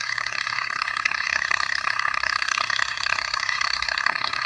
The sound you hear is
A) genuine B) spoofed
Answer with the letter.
B